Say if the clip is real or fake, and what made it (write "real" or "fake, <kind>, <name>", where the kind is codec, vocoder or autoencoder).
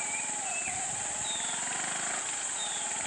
real